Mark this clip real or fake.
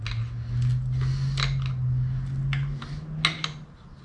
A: real